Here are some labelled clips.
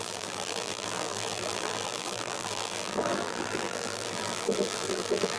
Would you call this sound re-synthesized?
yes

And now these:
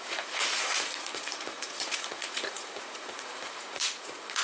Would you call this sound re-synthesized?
yes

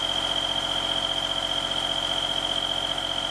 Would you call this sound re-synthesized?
no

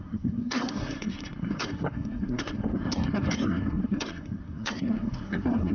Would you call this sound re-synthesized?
yes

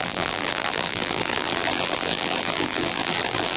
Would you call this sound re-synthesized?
yes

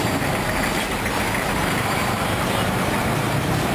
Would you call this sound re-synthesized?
yes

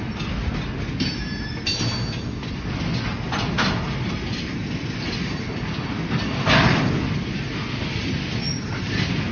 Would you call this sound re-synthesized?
no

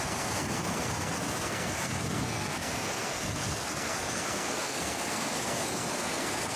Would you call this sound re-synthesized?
yes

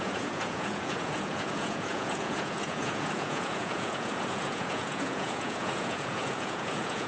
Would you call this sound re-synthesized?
yes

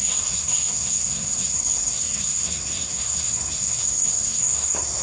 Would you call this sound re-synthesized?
yes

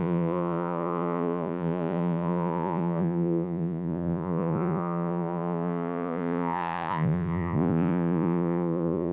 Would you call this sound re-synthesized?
yes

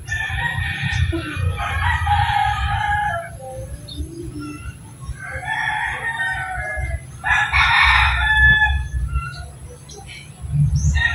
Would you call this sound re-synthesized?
no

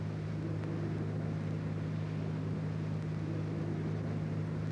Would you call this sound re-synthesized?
no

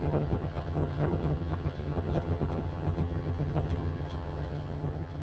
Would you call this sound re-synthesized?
yes